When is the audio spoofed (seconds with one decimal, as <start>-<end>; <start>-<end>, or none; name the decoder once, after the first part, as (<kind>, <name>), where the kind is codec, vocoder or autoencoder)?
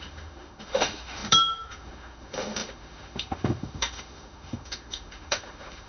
0.0-5.9 (autoencoder, DAC-VAE)